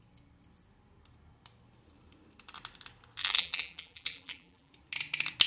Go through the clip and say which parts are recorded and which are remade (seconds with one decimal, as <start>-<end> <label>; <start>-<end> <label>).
0.0-3.2 recorded; 3.2-4.7 remade; 4.7-5.5 recorded